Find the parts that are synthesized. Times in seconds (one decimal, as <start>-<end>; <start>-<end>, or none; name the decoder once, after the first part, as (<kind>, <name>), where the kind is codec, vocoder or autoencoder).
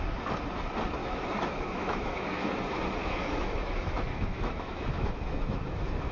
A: 1.0-2.5 (autoencoder, DAC-VAE); 3.0-6.1